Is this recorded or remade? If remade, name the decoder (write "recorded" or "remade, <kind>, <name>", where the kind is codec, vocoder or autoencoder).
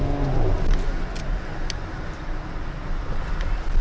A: recorded